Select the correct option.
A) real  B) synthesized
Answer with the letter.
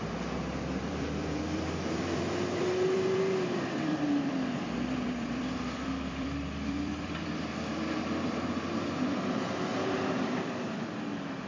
B